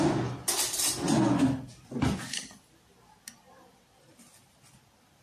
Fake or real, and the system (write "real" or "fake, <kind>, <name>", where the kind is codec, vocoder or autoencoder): real